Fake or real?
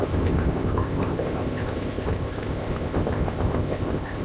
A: fake